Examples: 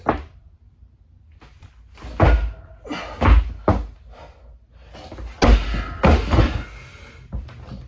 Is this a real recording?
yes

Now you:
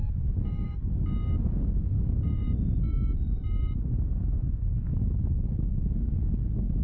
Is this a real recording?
no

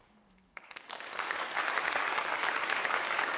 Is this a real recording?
no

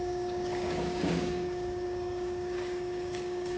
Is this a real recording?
no